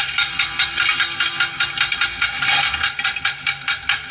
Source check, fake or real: real